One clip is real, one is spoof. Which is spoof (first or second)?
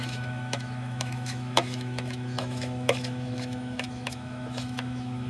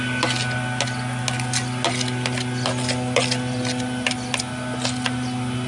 first